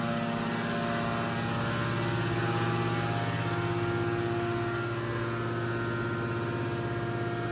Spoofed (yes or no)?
no